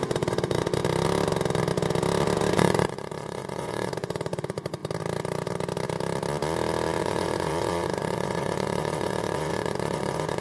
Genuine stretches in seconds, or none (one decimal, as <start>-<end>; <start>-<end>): 0.8-2.5; 4.8-7.0